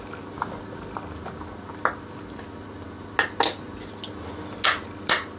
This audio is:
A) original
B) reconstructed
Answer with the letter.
A